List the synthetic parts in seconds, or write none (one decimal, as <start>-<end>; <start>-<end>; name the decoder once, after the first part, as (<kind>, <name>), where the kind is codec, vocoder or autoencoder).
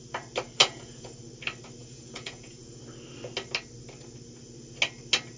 0.6-1.2 (vocoder, Vocos); 1.8-2.8